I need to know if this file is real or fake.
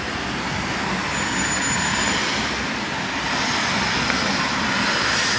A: real